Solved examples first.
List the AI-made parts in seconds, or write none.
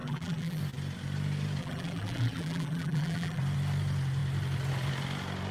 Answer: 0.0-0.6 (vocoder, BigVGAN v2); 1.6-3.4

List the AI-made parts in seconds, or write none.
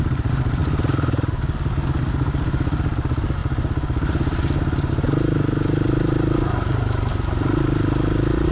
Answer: none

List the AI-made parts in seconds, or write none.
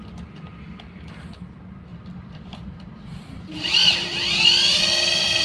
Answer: 1.9-4.8 (vocoder, BigVGAN v2)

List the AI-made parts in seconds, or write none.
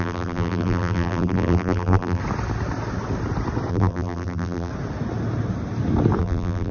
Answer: 0.0-2.2 (vocoder, BigVGAN v2); 3.7-4.7; 6.2-6.7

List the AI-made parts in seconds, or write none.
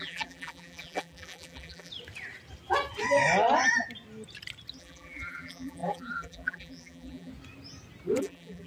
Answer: 0.0-1.9 (vocoder, BigVGAN v2); 4.8-7.3; 8.2-8.7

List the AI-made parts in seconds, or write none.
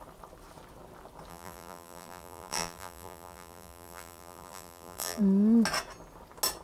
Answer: 1.3-5.2 (vocoder, BigVGAN v2)